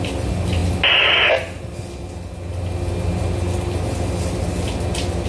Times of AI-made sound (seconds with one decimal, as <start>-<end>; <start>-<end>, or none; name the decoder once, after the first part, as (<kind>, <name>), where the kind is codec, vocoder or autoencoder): none